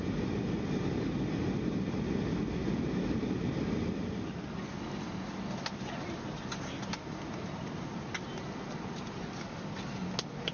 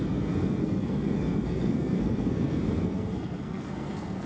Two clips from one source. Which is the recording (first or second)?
first